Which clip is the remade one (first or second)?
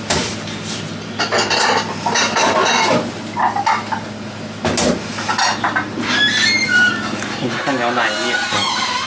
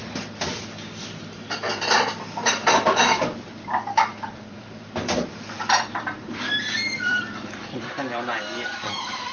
second